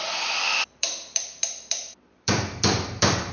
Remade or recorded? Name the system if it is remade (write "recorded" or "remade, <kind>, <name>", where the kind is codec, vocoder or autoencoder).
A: remade, vocoder, BigVGAN v2